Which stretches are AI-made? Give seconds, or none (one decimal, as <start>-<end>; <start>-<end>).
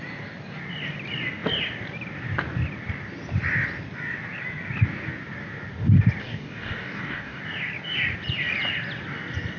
6.2-7.4